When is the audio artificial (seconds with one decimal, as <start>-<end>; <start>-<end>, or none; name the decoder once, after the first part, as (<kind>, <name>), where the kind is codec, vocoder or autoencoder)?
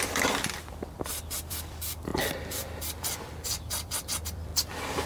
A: 0.0-4.5 (vocoder, BigVGAN v2)